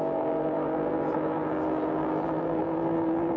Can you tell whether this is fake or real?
fake